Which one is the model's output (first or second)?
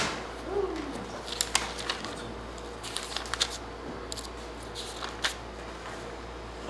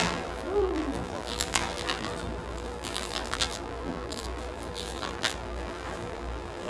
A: second